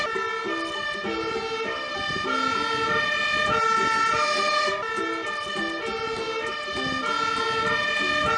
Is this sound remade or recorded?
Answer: recorded